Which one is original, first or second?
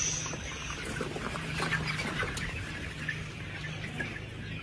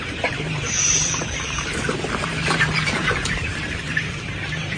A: first